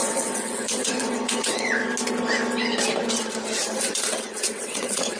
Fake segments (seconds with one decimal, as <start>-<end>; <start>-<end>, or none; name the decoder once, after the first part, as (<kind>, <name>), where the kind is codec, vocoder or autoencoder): 0.0-1.8 (vocoder, WaveNeXt); 3.8-5.2